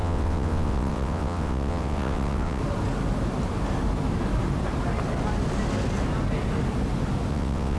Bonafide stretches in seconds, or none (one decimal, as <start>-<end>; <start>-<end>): 2.6-7.3